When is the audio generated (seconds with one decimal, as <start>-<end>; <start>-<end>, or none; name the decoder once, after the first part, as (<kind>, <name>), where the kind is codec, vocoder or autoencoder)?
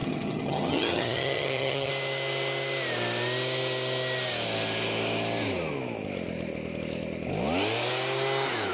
0.0-1.9 (vocoder, HiFi-GAN)